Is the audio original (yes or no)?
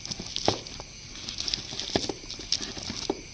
yes